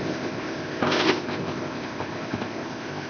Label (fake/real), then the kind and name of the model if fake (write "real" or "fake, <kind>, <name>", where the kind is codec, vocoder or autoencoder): fake, codec, ZipCodec